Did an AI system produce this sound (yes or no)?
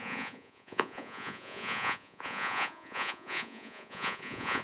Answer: yes